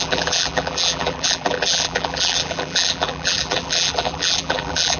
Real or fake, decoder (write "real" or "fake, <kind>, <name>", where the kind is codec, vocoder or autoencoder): fake, vocoder, BigVGAN v2